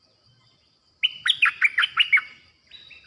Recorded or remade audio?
recorded